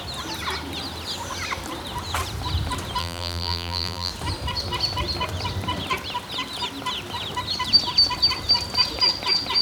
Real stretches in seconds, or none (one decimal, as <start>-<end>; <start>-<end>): 0.0-3.0; 4.1-9.6